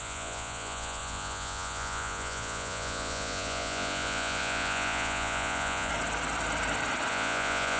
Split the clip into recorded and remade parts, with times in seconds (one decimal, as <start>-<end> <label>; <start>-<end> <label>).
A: 0.0-5.9 remade; 5.9-7.1 recorded; 7.1-7.8 remade